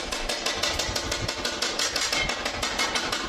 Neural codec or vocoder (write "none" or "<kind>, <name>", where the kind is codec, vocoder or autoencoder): none